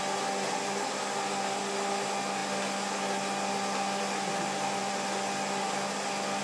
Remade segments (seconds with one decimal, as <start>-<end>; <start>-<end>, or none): none